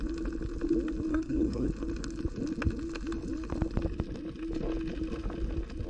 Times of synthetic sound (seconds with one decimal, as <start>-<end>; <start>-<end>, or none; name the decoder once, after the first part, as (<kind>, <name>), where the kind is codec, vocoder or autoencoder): 1.1-1.7 (codec, SNAC)